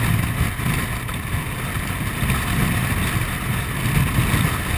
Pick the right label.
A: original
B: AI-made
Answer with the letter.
A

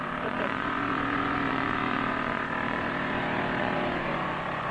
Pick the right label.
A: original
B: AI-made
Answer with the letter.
B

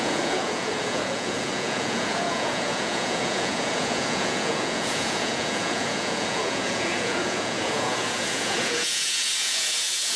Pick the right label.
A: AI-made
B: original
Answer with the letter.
A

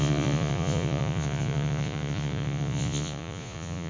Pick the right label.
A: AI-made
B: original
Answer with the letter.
A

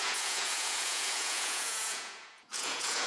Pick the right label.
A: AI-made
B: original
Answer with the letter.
A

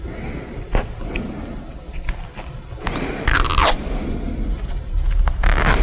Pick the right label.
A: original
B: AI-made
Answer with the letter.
A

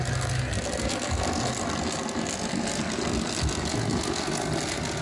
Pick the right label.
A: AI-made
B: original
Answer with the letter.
B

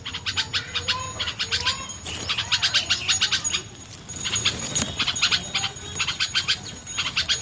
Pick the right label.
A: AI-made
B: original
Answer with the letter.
B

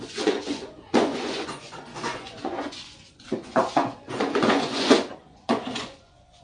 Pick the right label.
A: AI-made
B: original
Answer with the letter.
A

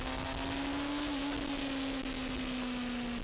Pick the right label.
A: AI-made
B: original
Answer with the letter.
B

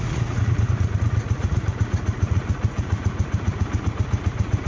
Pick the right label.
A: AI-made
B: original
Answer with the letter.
A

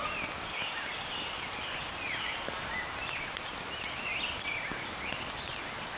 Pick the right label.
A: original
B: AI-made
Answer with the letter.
A